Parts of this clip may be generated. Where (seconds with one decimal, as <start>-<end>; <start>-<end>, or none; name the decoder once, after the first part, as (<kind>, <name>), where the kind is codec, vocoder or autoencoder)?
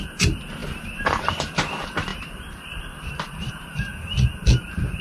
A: 0.0-3.9 (vocoder, BigVGAN v2)